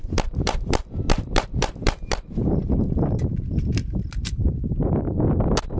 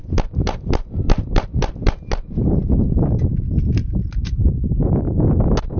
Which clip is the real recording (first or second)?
second